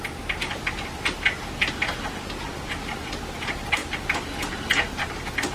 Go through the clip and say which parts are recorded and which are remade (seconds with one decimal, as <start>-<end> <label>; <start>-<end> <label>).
0.0-5.5 recorded